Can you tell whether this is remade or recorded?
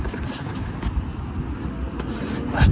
recorded